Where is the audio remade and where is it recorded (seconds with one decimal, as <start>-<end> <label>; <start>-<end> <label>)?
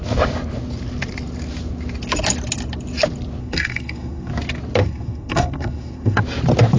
0.0-3.4 recorded; 3.4-4.3 remade; 4.3-4.8 recorded; 4.8-6.2 remade; 6.2-6.8 recorded